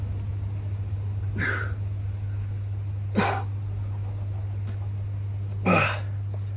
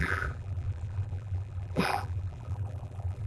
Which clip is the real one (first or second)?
first